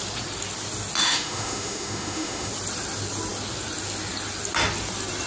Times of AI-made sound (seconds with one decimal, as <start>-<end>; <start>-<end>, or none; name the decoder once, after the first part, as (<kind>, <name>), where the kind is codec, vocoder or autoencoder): 1.0-2.5 (autoencoder, DAC-VAE)